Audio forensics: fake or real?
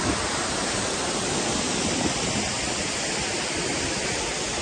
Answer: real